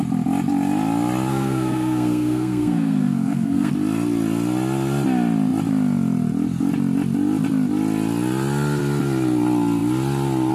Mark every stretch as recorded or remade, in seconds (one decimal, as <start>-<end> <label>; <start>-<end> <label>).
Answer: 0.0-1.3 recorded; 1.3-3.7 remade; 3.7-10.5 recorded